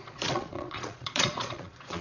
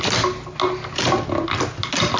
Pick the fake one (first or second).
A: first